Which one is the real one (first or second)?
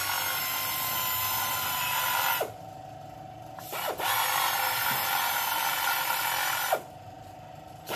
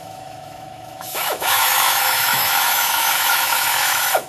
first